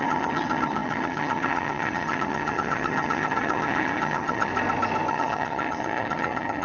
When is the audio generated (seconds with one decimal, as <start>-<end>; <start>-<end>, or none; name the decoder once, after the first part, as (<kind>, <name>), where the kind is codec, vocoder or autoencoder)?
0.0-4.5 (vocoder, HiFi-GAN); 5.1-6.6